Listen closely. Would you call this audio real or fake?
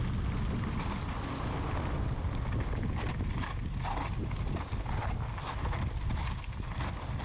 real